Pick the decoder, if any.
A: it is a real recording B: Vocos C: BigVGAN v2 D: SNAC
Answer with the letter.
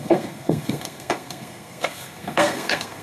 D